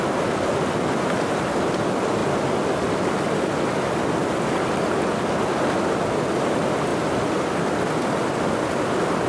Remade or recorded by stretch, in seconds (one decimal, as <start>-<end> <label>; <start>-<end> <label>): 0.0-9.3 recorded